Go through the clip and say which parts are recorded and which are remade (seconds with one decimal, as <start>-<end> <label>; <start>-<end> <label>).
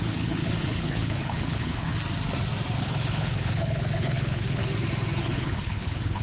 0.0-1.9 remade; 1.9-2.8 recorded; 2.8-4.6 remade; 4.6-5.2 recorded; 5.2-6.2 remade